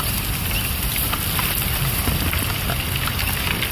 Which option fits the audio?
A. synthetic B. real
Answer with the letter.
B